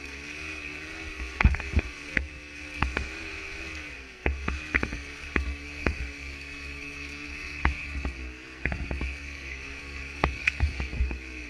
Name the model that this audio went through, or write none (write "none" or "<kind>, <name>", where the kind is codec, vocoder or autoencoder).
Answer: codec, SNAC